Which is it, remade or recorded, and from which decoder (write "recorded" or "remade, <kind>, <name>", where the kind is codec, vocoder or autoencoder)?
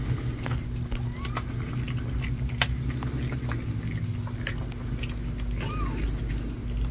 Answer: recorded